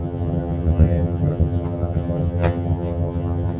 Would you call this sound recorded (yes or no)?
no